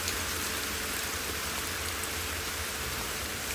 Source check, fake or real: real